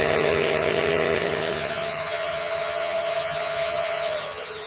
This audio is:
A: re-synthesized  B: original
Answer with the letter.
A